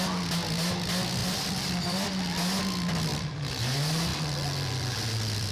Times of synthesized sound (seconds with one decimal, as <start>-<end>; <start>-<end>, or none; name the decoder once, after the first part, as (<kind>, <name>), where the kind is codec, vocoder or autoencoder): 1.2-2.1 (vocoder, BigVGAN v2); 3.1-3.6; 4.1-5.5